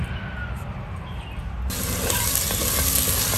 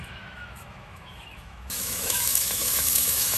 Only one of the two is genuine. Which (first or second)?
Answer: first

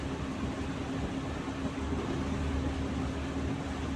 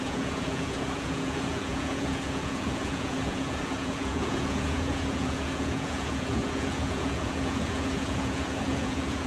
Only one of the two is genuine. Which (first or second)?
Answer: first